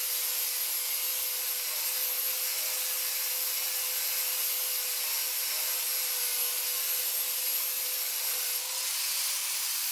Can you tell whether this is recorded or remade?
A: recorded